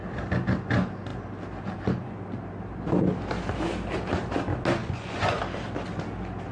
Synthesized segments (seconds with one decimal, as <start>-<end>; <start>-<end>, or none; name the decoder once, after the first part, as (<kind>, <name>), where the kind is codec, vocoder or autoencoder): 4.8-5.4 (vocoder, Vocos)